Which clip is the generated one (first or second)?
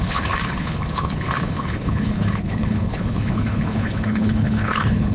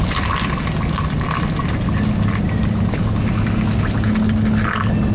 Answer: first